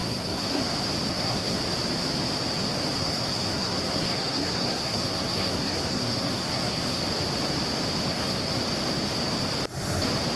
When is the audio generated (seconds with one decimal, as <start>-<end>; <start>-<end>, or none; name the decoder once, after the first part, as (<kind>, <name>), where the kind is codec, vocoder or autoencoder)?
0.0-0.7 (codec, SNAC); 1.1-1.6; 3.0-7.0; 8.1-8.6